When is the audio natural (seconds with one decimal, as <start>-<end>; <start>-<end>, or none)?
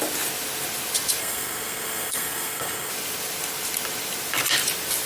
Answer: 0.0-1.2; 2.9-5.1